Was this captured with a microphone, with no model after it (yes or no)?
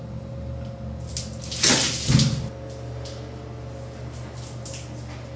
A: yes